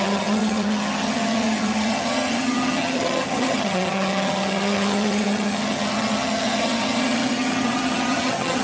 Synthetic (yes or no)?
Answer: yes